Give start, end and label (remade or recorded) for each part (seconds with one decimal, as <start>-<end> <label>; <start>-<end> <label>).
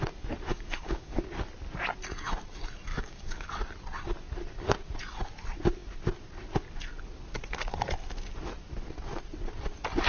0.0-0.5 recorded; 0.5-1.2 remade; 1.2-2.9 recorded; 2.9-3.5 remade; 3.5-10.1 recorded